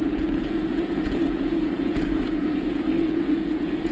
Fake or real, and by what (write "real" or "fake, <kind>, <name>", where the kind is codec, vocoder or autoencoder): fake, vocoder, Vocos